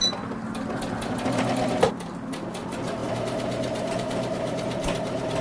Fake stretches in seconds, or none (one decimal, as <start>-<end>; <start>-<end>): 3.0-5.4